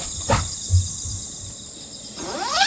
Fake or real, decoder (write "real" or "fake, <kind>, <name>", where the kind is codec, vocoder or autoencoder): real